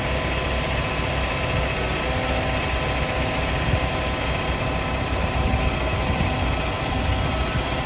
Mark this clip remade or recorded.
recorded